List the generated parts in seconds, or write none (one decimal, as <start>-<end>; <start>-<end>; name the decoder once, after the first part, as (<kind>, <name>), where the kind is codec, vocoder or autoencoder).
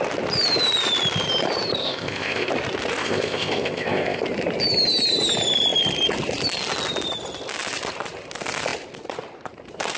1.8-2.5 (codec, ZipCodec); 3.0-4.2